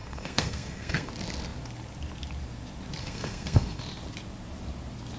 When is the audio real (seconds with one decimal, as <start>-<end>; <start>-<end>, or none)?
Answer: 1.1-3.0; 3.8-5.2